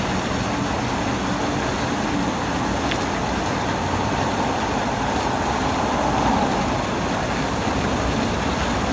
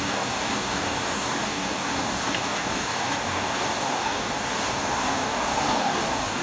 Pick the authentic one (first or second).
first